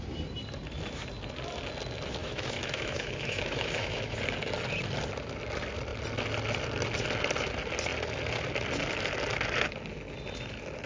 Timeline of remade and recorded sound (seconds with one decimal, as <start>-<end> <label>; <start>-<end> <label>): 0.0-2.2 recorded; 2.2-4.2 remade; 4.2-10.9 recorded